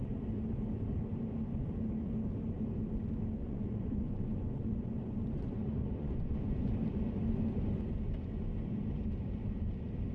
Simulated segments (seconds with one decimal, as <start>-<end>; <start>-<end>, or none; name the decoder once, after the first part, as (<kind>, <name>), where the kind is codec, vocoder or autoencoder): 3.4-6.7 (vocoder, Vocos)

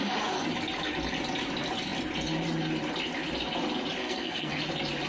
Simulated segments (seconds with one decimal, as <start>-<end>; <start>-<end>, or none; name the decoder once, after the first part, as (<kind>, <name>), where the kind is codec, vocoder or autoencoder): 4.0-4.6 (codec, SNAC)

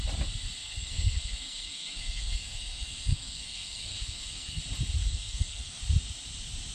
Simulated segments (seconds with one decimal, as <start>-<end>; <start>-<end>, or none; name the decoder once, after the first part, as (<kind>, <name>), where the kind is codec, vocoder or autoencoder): 0.6-4.6 (codec, SNAC); 5.0-5.8

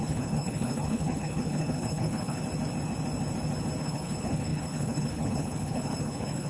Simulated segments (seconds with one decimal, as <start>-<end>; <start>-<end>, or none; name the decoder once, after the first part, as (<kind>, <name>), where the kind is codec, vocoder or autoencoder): 0.0-2.4 (codec, HILCodec); 3.8-6.5

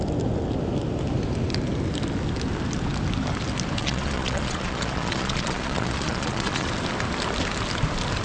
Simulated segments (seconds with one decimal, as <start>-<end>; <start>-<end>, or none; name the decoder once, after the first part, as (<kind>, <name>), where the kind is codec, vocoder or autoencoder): 3.8-6.7 (vocoder, Vocos)